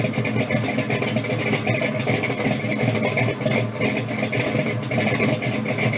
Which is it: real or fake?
real